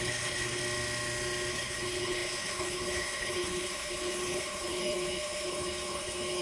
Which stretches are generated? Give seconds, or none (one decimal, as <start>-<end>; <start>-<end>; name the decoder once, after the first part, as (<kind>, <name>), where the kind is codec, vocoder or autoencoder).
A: 0.0-0.6 (codec, HILCodec); 1.5-6.4